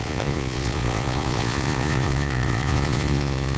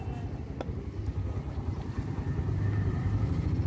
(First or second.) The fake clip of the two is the first